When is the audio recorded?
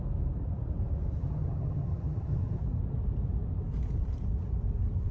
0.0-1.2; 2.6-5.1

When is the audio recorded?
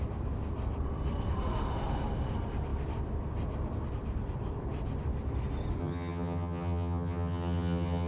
0.0-5.8